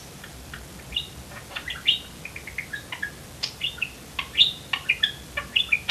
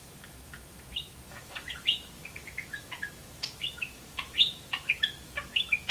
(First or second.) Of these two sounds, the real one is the first